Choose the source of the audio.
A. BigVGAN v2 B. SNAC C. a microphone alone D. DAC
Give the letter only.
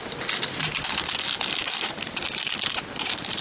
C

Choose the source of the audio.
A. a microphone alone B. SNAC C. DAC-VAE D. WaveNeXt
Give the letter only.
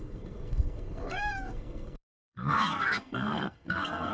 B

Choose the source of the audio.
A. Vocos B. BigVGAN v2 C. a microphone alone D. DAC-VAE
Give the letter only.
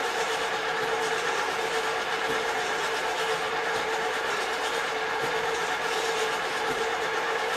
B